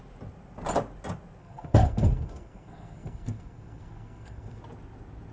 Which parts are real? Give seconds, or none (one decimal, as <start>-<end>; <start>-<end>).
0.0-1.4; 4.6-5.3